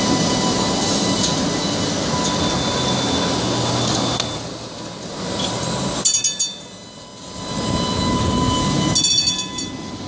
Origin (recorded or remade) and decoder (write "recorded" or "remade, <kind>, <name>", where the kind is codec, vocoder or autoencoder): recorded